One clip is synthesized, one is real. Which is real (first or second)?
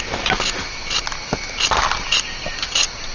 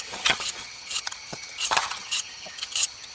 first